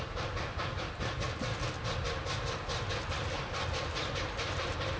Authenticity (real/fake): real